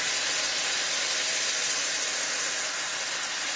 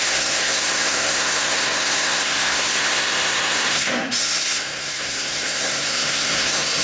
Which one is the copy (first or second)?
second